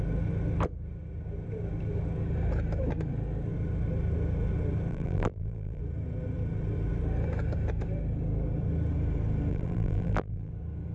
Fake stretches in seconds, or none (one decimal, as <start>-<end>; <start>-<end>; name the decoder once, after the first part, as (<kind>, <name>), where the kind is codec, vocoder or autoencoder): 4.9-5.8 (vocoder, BigVGAN v2); 9.5-10.5